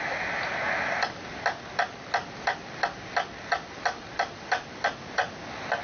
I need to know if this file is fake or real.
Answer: real